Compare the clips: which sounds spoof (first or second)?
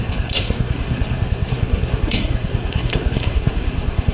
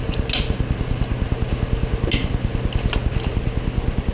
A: first